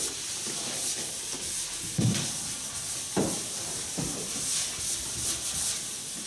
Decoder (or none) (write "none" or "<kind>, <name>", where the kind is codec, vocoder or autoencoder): none